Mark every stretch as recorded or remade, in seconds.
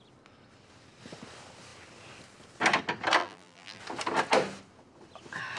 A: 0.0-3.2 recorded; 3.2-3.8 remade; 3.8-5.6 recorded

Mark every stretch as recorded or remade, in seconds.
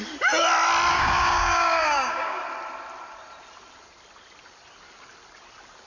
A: 0.0-0.9 recorded; 0.9-2.4 remade; 2.4-5.9 recorded